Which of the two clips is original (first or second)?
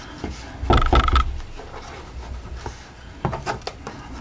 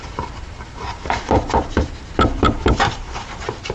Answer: first